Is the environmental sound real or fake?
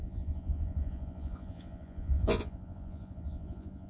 fake